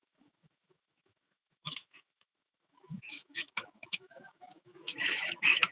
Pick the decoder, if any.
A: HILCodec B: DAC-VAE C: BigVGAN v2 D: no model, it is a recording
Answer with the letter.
B